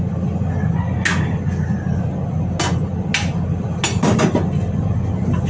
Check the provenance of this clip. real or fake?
real